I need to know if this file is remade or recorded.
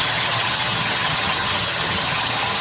remade